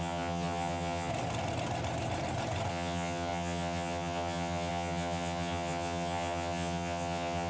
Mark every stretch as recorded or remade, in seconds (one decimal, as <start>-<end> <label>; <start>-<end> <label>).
0.0-1.1 remade; 1.1-2.7 recorded; 2.7-7.5 remade